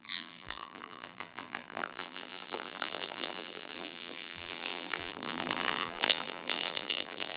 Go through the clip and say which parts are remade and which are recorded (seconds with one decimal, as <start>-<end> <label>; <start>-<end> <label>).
0.0-7.4 remade